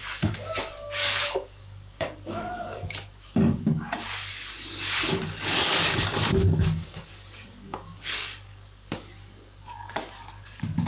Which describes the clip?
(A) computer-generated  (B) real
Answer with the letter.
A